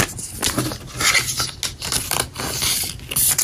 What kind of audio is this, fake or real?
real